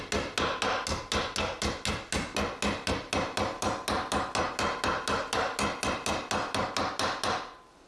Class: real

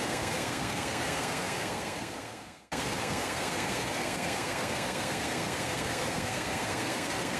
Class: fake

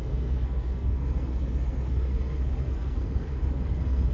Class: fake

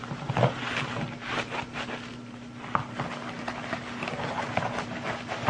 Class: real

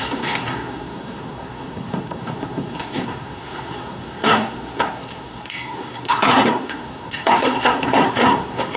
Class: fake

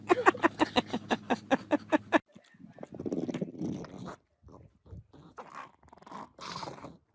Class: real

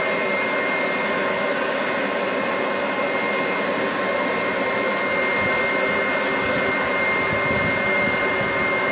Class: real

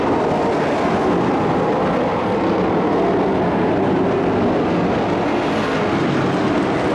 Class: real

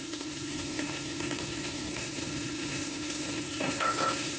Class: fake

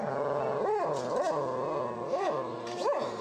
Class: real